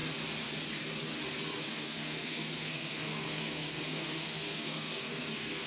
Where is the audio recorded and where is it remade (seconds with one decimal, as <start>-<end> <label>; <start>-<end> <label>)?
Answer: 0.0-1.6 recorded; 1.6-5.7 remade